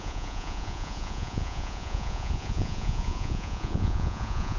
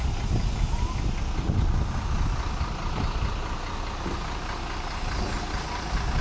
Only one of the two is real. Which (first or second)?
second